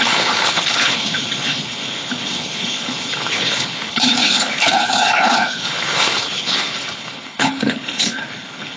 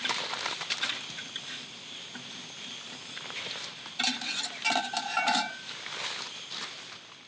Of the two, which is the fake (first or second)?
first